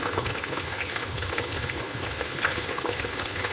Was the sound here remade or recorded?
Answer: remade